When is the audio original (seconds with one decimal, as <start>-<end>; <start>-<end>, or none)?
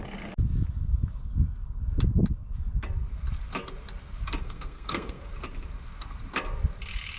0.0-4.4; 5.2-7.2